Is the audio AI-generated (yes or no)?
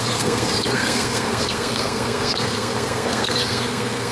yes